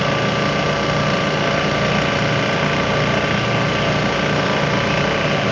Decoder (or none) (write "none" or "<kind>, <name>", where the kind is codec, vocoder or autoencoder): none